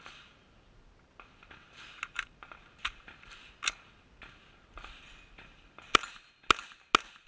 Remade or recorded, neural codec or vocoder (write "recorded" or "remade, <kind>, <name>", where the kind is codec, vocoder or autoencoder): recorded